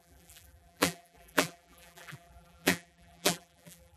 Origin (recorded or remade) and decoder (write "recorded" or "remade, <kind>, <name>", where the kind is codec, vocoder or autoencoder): remade, vocoder, BigVGAN v2